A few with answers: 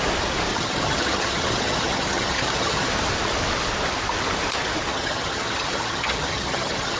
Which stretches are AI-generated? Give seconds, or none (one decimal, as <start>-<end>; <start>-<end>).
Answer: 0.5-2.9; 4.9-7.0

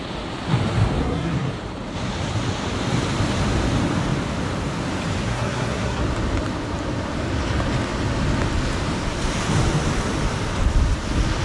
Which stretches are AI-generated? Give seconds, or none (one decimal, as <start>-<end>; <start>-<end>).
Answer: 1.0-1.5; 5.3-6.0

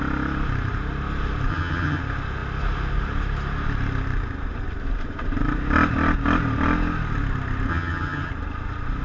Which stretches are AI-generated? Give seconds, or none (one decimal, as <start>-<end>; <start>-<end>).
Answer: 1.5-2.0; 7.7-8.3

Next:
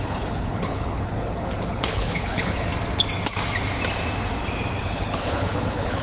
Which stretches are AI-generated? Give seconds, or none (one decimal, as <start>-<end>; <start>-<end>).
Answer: 0.0-2.7; 4.8-6.0

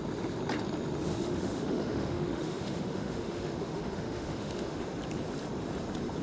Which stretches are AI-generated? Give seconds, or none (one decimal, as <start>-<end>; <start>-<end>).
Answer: 1.1-4.8

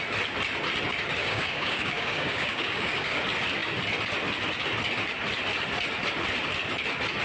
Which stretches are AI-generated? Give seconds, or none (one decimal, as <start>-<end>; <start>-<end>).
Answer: 1.2-3.2